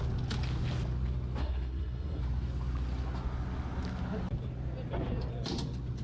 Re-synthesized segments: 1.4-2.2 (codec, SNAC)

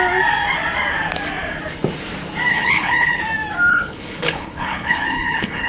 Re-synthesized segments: 2.5-3.2 (codec, HILCodec); 3.7-5.7

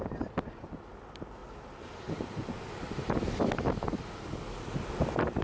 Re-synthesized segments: none

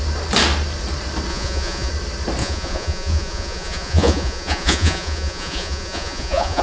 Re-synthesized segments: 1.3-1.9 (vocoder, Vocos); 2.4-6.6

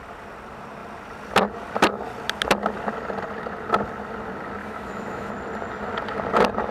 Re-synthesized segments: 4.6-5.3 (autoencoder, DAC-VAE)